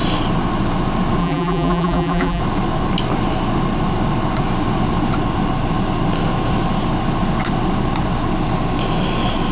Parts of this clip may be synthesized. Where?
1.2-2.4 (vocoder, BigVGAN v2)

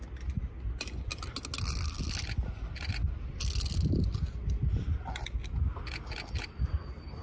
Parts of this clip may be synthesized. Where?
none

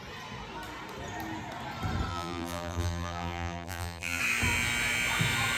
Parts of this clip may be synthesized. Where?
2.1-4.2 (vocoder, BigVGAN v2)

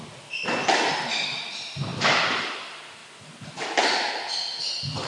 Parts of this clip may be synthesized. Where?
1.9-2.5 (vocoder, BigVGAN v2); 3.0-5.1

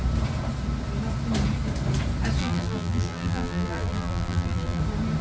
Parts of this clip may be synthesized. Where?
2.4-4.8 (vocoder, BigVGAN v2)